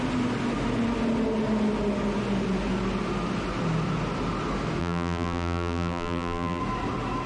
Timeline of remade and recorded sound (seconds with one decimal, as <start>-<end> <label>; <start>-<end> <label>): 0.0-4.8 recorded; 4.8-6.6 remade; 6.6-7.3 recorded